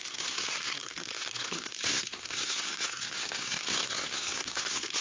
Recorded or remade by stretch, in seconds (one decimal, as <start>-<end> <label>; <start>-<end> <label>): 0.0-5.0 remade